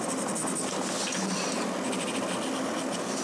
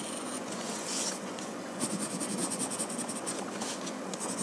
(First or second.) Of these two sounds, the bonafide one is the first